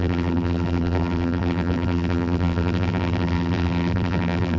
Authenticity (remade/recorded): remade